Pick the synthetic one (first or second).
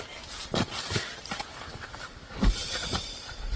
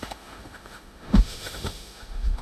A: second